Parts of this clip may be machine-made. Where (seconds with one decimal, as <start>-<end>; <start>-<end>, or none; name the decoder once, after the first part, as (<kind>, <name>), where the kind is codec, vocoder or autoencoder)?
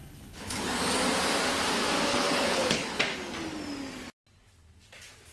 0.0-0.6 (codec, HILCodec); 2.1-3.0